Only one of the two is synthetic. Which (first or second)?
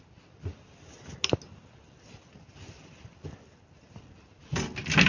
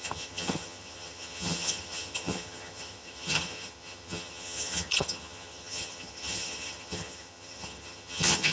second